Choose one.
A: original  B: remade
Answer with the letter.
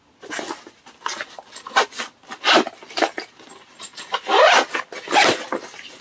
A